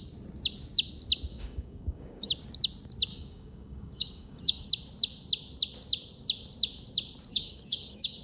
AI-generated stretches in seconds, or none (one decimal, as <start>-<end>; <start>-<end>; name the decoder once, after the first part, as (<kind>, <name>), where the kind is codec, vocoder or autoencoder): 1.3-2.3 (codec, DAC); 3.1-4.7; 7.3-8.2

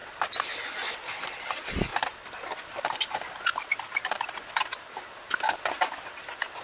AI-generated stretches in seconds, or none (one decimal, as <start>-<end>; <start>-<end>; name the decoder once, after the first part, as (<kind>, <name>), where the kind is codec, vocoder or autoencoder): none

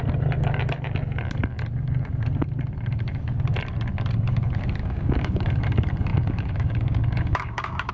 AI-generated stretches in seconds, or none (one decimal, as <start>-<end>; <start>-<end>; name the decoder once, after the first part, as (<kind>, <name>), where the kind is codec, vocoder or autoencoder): 4.8-5.5 (codec, DAC); 6.1-7.9

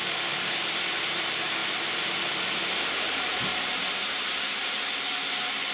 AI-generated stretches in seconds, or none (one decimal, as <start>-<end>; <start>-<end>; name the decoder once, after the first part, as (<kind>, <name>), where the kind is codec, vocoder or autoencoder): 0.0-0.6 (codec, DAC)

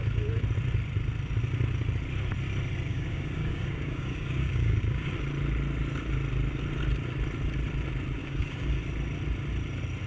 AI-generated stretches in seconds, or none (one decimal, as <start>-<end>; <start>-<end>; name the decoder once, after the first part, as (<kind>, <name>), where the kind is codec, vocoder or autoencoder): 2.9-5.1 (codec, DAC); 8.2-8.8

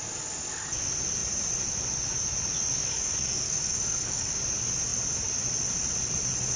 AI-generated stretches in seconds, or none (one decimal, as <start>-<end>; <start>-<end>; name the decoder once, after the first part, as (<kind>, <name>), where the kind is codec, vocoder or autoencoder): 2.8-4.3 (codec, DAC)